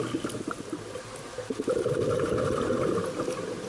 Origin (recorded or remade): recorded